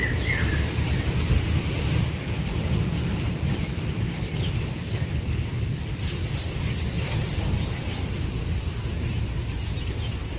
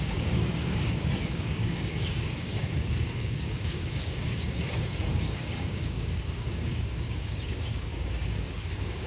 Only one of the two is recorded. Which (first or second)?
first